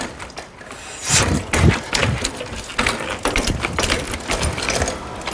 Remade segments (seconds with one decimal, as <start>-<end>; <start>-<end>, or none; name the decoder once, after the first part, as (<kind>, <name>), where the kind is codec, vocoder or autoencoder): none